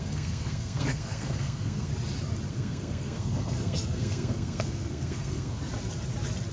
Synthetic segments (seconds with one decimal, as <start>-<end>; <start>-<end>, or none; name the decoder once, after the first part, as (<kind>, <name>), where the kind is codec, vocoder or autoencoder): 0.0-1.9 (codec, SNAC); 2.5-5.6